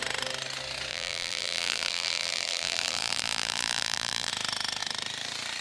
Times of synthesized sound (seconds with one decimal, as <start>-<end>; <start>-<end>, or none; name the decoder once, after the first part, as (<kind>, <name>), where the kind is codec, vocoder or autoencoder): 0.9-4.3 (vocoder, BigVGAN v2)